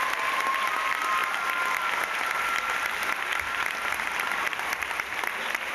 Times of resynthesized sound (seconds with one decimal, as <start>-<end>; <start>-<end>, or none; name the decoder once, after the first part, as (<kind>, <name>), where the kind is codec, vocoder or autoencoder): none